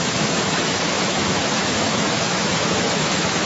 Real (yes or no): no